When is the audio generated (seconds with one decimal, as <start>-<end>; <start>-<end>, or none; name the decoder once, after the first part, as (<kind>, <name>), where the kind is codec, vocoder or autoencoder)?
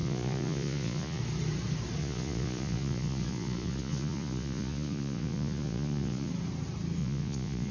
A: 0.0-1.2 (vocoder, Vocos); 2.0-6.3; 7.0-7.7